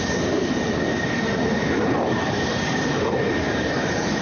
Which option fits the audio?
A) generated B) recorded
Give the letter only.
A